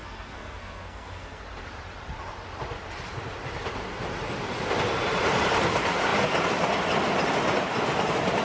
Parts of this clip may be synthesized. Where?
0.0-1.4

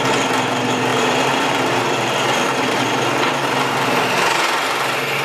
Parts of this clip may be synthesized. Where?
0.9-3.3

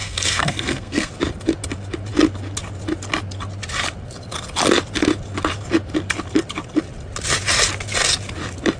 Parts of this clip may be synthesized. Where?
0.0-1.1

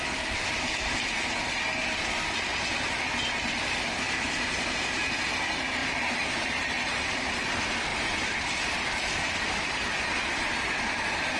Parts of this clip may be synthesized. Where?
7.9-9.2